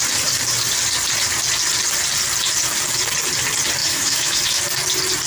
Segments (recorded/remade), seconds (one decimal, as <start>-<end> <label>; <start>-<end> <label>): 0.0-3.8 recorded; 3.8-4.6 remade; 4.6-5.3 recorded